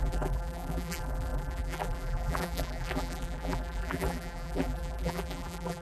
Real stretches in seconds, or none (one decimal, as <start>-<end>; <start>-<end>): none